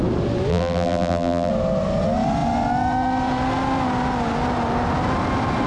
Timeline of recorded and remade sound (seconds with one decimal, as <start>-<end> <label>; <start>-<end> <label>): 0.0-0.5 recorded; 0.5-1.5 remade; 1.5-5.7 recorded